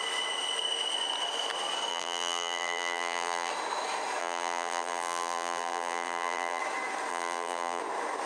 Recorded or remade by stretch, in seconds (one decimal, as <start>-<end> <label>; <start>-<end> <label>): 0.0-1.9 recorded; 1.9-3.5 remade; 3.5-4.2 recorded; 4.2-6.6 remade; 6.6-7.1 recorded; 7.1-7.8 remade; 7.8-8.3 recorded

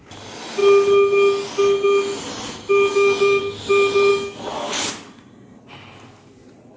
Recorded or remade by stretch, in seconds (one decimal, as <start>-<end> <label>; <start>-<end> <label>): 0.0-2.9 recorded; 2.9-3.4 remade; 3.4-4.1 recorded; 4.1-4.9 remade; 4.9-6.8 recorded

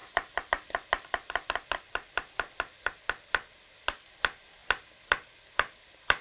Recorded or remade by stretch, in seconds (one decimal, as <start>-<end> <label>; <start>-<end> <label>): 0.0-6.2 recorded

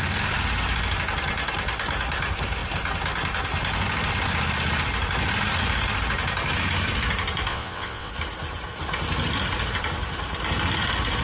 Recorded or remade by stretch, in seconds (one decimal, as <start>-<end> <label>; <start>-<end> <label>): 0.0-7.5 recorded; 7.5-8.1 remade; 8.1-11.2 recorded

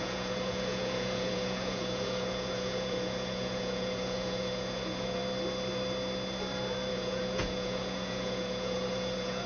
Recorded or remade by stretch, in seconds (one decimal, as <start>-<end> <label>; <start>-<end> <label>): 0.0-5.2 remade; 5.2-6.9 recorded; 6.9-9.5 remade

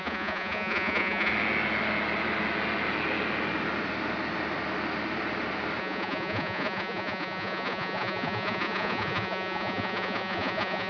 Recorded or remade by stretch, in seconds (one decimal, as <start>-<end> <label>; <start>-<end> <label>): 0.0-1.3 remade; 1.3-5.8 recorded; 5.8-10.9 remade

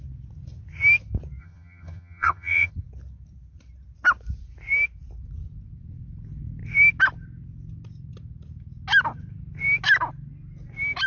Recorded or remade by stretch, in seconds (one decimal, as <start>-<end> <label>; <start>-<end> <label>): 0.0-1.4 recorded; 1.4-2.7 remade; 2.7-11.1 recorded